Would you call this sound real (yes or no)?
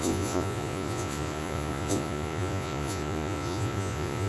no